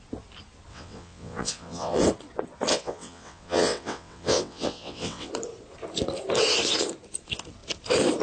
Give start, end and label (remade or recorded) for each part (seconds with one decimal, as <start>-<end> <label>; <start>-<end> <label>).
0.0-0.7 recorded; 0.7-2.0 remade; 2.0-2.7 recorded; 2.7-5.3 remade; 5.3-8.2 recorded